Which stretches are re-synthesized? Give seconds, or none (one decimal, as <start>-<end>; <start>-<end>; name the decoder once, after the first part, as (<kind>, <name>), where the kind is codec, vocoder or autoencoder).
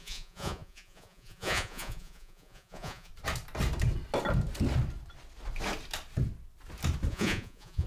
0.0-3.1 (vocoder, Vocos); 7.1-7.9